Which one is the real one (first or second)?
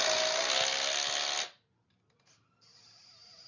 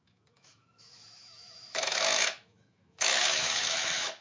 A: first